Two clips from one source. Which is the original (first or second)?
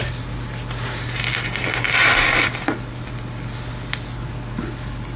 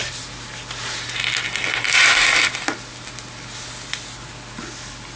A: second